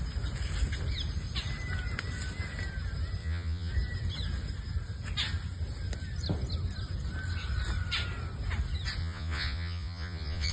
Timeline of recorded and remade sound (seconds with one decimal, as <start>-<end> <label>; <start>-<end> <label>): 0.0-3.2 recorded; 3.2-3.7 remade; 3.7-9.0 recorded; 9.0-10.5 remade

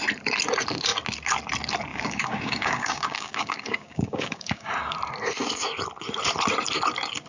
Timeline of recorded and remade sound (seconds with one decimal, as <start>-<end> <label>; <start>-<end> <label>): 0.0-1.9 recorded; 1.9-4.7 remade; 4.7-7.3 recorded

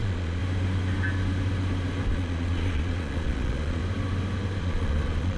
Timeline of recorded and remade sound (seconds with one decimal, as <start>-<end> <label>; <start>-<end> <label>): 0.0-0.4 remade; 0.4-2.1 recorded; 2.1-3.8 remade; 3.8-4.6 recorded; 4.6-5.4 remade

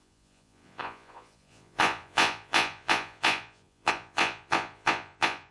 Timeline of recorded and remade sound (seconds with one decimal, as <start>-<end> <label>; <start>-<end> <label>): 0.0-5.5 remade